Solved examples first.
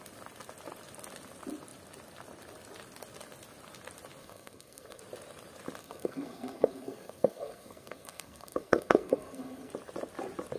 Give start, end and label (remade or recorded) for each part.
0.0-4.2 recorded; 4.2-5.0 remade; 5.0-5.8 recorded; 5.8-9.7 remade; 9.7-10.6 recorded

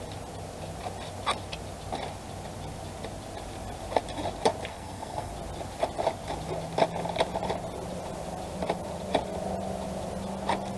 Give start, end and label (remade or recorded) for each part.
0.0-4.7 recorded; 4.7-5.3 remade; 5.3-10.8 recorded

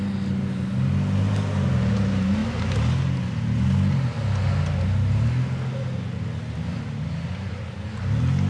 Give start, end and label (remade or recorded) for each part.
0.0-8.5 recorded

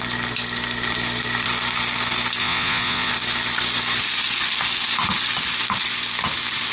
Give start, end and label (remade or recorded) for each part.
0.0-2.4 recorded; 2.4-3.1 remade; 3.1-6.7 recorded

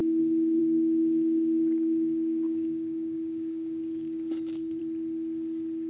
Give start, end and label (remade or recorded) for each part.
0.0-4.8 remade; 4.8-5.9 recorded

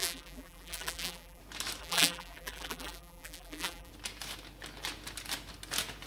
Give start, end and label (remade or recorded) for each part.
0.0-1.4 remade; 1.4-1.8 recorded; 1.8-3.9 remade; 3.9-6.1 recorded

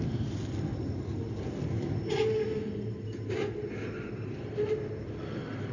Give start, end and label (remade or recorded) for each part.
0.0-0.7 remade; 0.7-1.3 recorded; 1.3-1.8 remade; 1.8-5.0 recorded; 5.0-5.7 remade

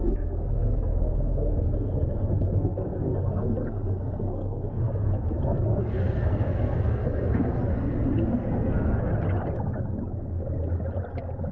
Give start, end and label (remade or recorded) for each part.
0.0-7.7 remade; 7.7-8.3 recorded; 8.3-9.1 remade; 9.1-11.5 recorded